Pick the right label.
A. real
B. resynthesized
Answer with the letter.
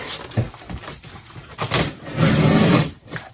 B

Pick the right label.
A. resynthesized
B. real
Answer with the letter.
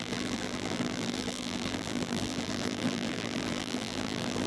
A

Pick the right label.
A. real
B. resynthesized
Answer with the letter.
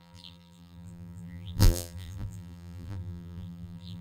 B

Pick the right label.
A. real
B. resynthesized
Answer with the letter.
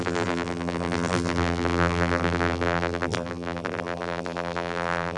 B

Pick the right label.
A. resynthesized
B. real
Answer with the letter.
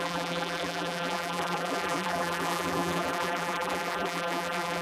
A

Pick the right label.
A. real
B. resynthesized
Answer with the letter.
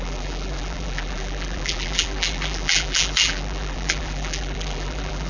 B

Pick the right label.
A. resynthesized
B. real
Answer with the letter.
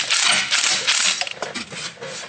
B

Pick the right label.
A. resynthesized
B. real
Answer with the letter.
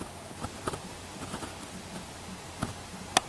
B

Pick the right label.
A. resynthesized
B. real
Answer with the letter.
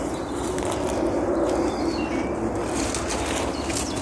B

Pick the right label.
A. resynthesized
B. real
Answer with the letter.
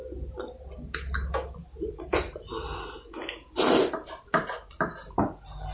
B